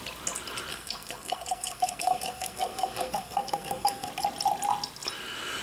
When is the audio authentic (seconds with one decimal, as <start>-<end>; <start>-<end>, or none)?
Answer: 0.0-0.7; 4.1-5.6